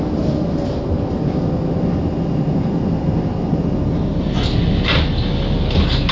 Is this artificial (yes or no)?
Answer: no